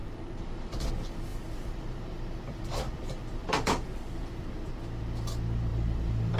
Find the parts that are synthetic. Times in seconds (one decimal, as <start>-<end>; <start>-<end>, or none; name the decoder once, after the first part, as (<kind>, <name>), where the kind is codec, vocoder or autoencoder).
0.0-0.9 (vocoder, BigVGAN v2); 1.3-4.7; 5.7-6.4